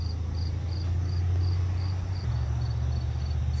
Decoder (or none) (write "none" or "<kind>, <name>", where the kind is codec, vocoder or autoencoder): none